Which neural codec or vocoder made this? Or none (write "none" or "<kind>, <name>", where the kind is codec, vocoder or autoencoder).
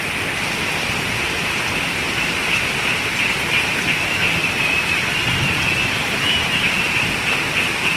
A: vocoder, BigVGAN v2